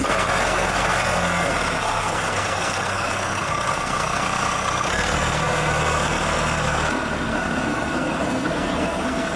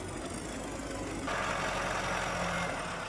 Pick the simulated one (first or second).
first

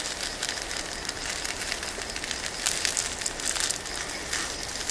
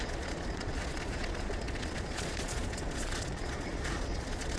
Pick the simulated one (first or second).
second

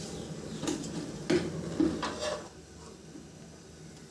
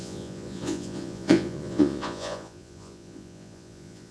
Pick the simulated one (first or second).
second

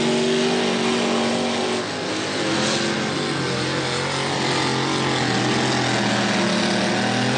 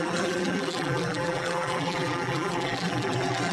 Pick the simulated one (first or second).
second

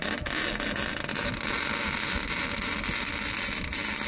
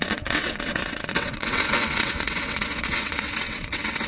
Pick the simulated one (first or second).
second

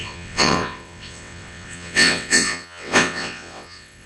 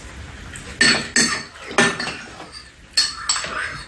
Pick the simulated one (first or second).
first